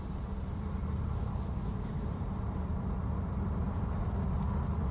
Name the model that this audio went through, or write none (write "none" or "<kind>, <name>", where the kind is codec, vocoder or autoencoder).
vocoder, BigVGAN v2